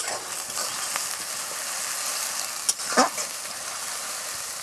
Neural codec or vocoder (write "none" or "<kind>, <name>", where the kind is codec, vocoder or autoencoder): none